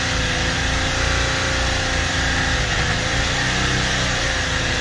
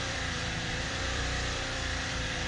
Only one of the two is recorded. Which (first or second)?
first